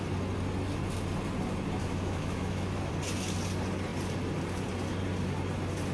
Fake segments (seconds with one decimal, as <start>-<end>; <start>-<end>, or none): 1.8-2.9